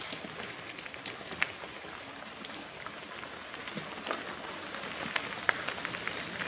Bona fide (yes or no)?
yes